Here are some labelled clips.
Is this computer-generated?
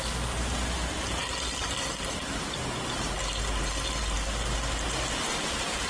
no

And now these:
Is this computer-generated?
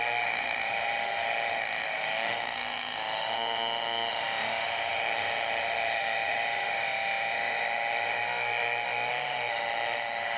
yes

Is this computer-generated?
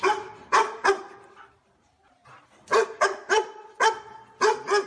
no